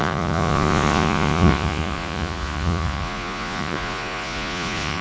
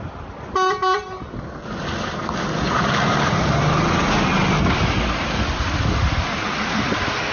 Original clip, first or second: second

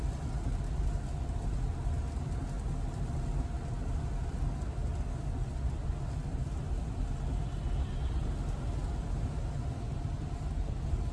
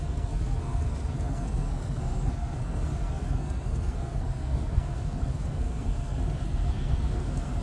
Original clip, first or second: first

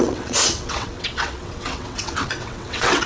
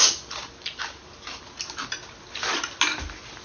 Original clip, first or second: second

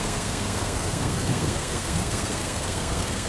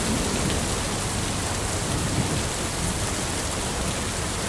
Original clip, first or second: second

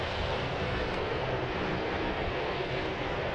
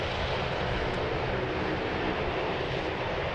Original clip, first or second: second